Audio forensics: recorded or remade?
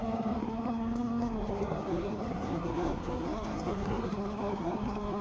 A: remade